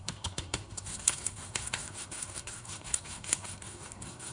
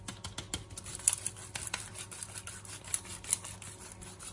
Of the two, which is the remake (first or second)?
first